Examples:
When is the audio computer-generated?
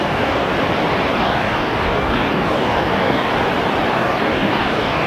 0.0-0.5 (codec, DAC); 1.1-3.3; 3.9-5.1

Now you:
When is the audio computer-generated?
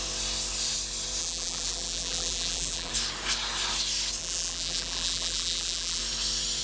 1.2-2.9 (vocoder, BigVGAN v2); 4.2-6.0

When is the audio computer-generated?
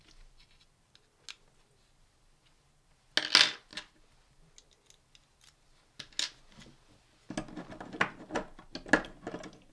none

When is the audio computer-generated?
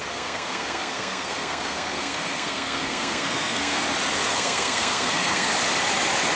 0.0-3.8 (codec, SNAC); 4.3-5.5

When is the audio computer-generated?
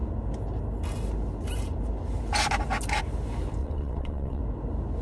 3.6-4.4 (vocoder, WaveNeXt)